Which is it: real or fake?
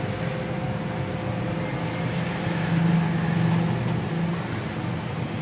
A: real